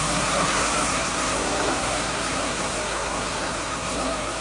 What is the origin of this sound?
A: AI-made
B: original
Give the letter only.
A